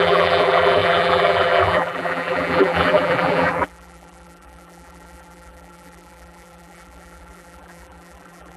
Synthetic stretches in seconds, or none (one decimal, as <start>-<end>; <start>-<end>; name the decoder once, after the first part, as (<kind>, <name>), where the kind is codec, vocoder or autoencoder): 0.0-8.6 (vocoder, BigVGAN v2)